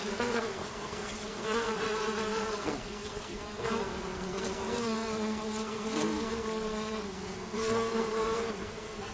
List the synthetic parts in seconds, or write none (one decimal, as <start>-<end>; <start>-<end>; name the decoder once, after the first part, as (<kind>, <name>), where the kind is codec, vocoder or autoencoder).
0.0-9.1 (codec, SNAC)